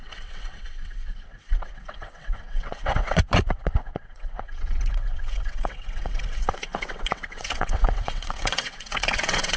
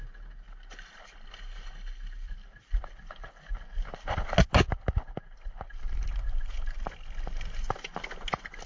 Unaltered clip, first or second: second